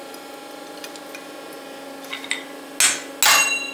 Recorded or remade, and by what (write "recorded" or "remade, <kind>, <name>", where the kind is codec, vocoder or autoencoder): recorded